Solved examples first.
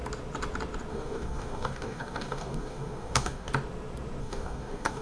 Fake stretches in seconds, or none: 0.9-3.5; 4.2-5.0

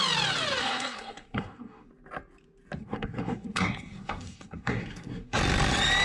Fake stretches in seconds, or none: 0.6-1.9; 2.8-5.4

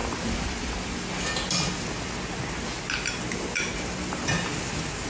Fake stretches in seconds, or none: 4.5-5.1